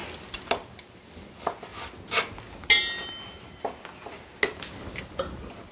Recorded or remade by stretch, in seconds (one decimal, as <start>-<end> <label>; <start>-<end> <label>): 0.0-5.7 recorded